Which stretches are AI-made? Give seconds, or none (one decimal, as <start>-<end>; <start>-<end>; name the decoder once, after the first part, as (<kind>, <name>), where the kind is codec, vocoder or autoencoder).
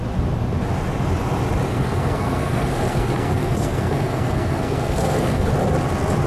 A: 1.7-5.5 (codec, SNAC)